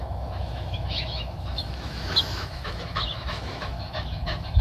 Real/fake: fake